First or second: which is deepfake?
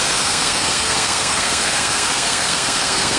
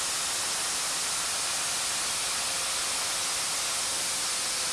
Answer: first